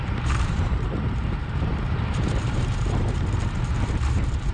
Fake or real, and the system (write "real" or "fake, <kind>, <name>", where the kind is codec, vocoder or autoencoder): fake, vocoder, BigVGAN v2